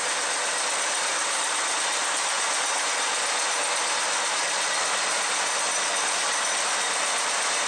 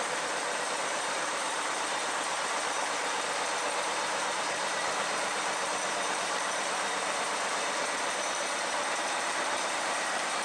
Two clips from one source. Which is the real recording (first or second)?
first